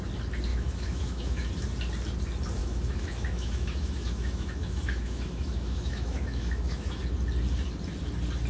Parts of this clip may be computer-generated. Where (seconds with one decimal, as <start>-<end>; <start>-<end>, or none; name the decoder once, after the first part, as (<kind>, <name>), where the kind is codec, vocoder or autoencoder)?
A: 0.5-1.5 (autoencoder, DAC-VAE); 2.6-7.0